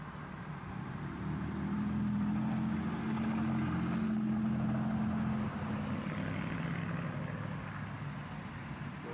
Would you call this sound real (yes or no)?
yes